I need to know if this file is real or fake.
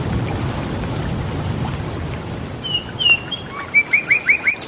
real